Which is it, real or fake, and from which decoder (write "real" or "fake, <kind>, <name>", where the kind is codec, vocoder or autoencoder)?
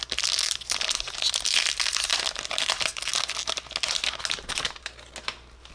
real